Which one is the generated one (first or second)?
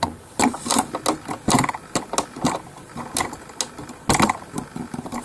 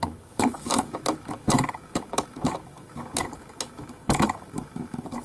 second